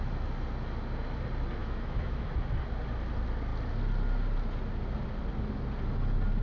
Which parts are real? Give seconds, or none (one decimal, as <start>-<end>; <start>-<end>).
0.0-1.6; 2.3-6.4

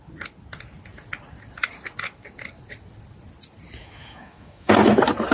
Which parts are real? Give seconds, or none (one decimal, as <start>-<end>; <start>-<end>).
0.0-3.8; 4.7-5.3

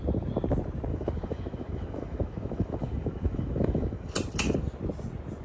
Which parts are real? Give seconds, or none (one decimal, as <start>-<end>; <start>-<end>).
0.0-0.9; 4.1-5.4

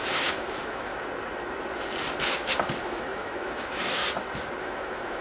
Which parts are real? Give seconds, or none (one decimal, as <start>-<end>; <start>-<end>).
0.9-2.8; 4.0-4.6

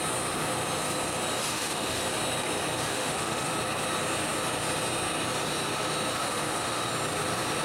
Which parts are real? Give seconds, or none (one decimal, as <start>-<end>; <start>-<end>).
0.0-1.5; 2.0-2.9; 3.5-6.2; 6.9-7.6

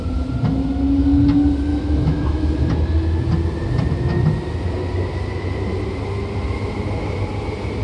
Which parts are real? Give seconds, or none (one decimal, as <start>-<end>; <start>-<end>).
0.0-1.7; 2.5-7.8

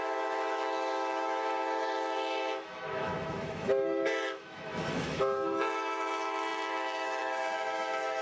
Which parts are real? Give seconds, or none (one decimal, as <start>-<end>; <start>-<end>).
none